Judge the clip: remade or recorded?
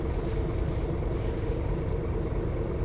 recorded